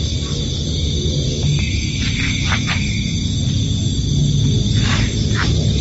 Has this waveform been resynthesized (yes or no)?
no